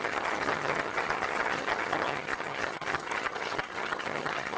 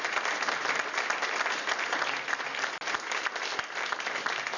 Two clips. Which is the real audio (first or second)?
second